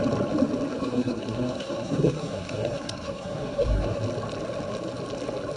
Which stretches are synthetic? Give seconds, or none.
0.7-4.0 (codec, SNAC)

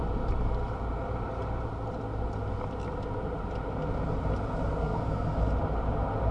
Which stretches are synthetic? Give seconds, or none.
4.8-5.4 (codec, SNAC)